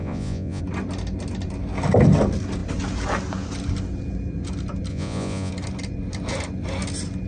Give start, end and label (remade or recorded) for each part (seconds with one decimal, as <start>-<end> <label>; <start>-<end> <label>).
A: 0.0-0.6 remade; 0.6-4.9 recorded; 4.9-5.5 remade; 5.5-7.3 recorded